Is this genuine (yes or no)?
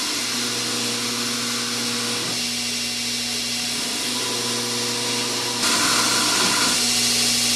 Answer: yes